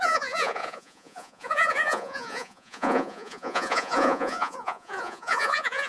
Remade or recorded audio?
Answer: remade